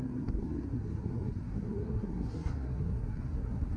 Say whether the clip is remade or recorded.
remade